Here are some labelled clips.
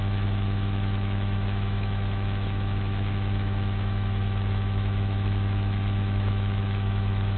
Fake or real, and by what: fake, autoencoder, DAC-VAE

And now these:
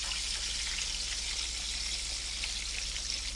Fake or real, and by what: real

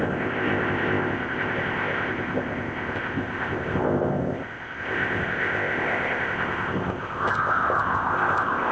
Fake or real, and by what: fake, codec, ZipCodec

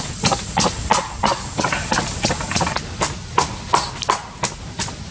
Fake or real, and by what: real